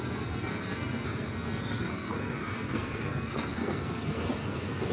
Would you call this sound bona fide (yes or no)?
no